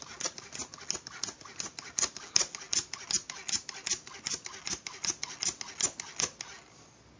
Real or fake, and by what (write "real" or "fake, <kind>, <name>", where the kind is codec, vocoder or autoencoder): real